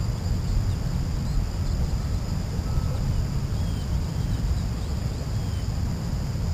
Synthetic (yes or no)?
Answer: no